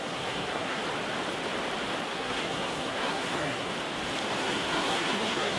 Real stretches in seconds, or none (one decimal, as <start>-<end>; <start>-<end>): 0.8-2.1; 3.7-4.4